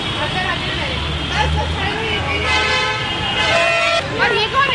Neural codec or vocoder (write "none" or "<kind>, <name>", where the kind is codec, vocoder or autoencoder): none